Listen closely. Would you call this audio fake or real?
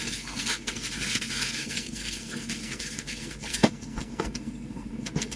fake